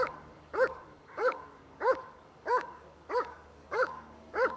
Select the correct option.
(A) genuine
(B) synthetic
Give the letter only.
B